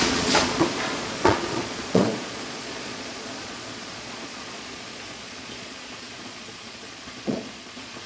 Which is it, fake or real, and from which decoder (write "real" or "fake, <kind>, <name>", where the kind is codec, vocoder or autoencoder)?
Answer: fake, vocoder, Vocos